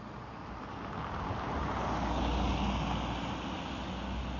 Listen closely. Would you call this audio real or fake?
real